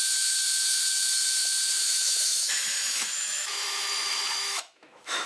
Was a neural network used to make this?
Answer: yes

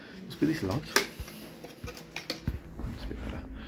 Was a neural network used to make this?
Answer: no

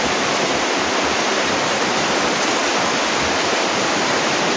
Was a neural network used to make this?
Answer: no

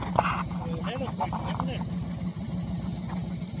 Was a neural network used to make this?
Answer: no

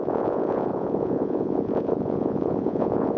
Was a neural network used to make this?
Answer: yes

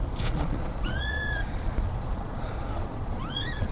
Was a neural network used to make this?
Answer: yes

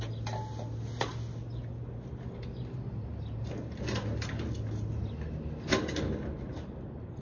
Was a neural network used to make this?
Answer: no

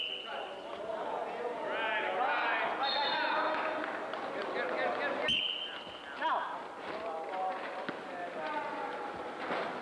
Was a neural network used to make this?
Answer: no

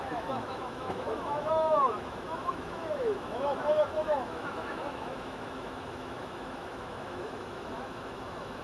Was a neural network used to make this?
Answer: yes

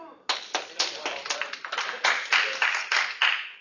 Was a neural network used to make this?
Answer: no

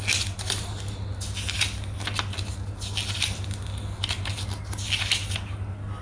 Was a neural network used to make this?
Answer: no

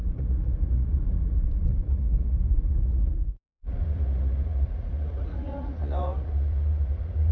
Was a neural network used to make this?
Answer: yes